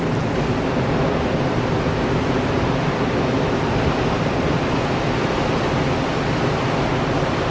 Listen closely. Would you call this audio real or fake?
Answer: real